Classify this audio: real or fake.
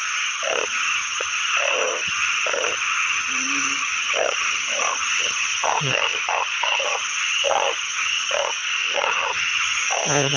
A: fake